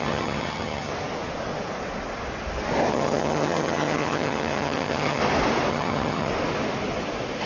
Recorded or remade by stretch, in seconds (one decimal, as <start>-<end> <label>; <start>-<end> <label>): 0.0-0.9 remade; 0.9-2.9 recorded; 2.9-5.2 remade; 5.2-5.7 recorded; 5.7-6.3 remade; 6.3-7.5 recorded